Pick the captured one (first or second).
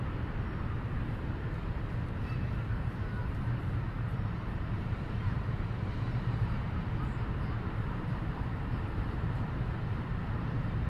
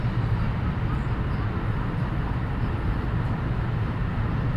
second